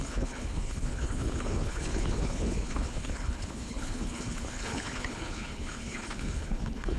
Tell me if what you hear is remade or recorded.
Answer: remade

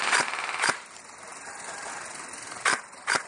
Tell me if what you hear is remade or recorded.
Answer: remade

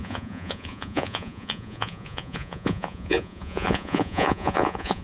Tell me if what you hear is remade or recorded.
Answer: remade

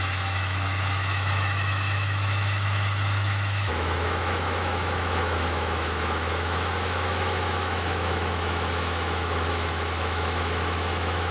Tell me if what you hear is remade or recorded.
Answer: remade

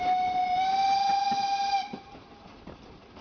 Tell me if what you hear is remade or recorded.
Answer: recorded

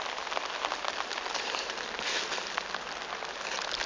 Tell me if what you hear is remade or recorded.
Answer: recorded